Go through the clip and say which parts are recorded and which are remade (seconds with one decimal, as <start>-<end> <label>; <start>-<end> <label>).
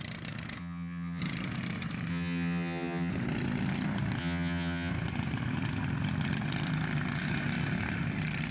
0.0-0.6 recorded; 0.6-1.2 remade; 1.2-2.1 recorded; 2.1-3.1 remade; 3.1-4.2 recorded; 4.2-4.9 remade; 4.9-8.5 recorded